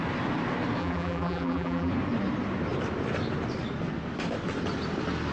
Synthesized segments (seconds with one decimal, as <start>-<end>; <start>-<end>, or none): 0.8-1.9